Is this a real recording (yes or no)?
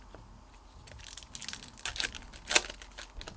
yes